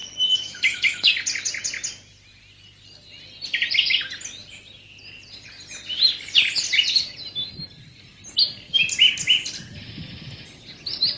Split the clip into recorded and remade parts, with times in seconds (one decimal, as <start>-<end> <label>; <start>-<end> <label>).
0.0-1.1 remade; 1.1-11.2 recorded